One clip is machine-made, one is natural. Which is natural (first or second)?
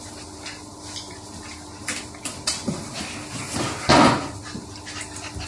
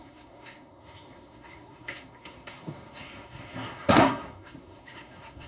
first